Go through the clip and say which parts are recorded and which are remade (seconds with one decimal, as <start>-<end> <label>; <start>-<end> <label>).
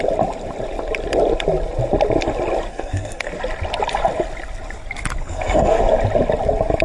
0.0-2.7 recorded; 2.7-3.3 remade; 3.3-5.2 recorded; 5.2-5.8 remade; 5.8-6.8 recorded